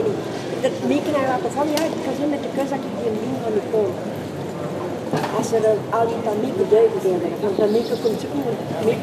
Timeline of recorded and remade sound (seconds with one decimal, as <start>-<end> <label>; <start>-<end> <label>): 0.0-9.0 recorded